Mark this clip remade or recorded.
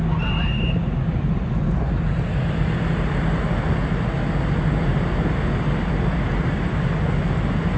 recorded